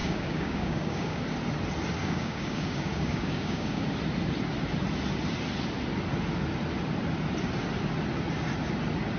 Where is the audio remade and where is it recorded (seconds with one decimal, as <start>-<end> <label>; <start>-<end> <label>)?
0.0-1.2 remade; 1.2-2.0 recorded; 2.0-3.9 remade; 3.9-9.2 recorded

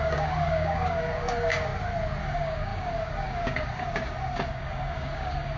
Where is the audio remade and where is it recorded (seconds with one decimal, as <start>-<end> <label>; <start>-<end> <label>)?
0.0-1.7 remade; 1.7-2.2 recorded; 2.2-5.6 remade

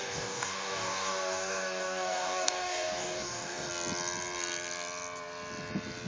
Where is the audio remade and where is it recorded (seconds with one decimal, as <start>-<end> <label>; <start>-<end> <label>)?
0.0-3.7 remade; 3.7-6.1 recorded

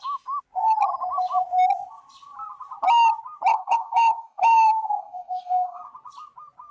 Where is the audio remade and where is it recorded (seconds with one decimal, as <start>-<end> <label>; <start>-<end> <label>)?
0.0-3.5 recorded; 3.5-5.8 remade; 5.8-6.7 recorded

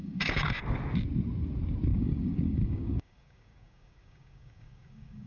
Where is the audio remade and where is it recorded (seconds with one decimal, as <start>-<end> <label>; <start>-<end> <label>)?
0.0-0.6 remade; 0.6-1.9 recorded; 1.9-5.3 remade